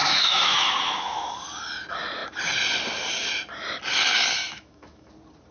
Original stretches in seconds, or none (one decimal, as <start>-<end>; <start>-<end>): 1.3-4.4; 5.1-5.5